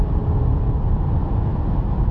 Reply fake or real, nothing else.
real